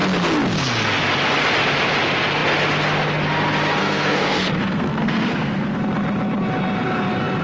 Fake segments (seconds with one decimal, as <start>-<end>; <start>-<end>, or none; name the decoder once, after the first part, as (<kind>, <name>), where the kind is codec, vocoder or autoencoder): 3.8-5.8 (codec, SNAC)